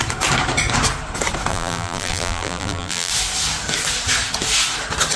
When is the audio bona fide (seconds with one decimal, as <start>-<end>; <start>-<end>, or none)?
0.0-1.5; 3.1-5.2